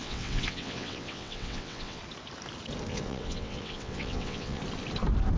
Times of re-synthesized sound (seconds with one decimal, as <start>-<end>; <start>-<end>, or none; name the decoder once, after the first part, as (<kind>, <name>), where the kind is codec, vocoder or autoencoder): 0.0-2.0 (vocoder, WaveNeXt); 2.9-4.6